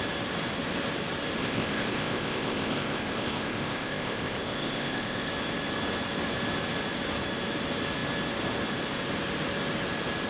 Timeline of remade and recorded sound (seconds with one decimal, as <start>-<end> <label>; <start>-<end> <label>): 0.0-1.4 recorded; 1.4-5.3 remade; 5.3-10.3 recorded